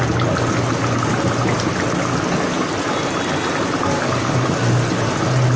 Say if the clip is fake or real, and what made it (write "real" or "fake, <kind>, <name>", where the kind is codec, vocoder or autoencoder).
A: real